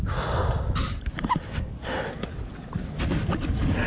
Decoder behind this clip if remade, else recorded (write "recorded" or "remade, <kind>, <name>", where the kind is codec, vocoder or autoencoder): recorded